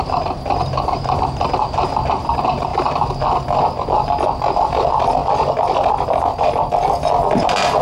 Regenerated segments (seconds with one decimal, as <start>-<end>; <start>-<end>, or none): none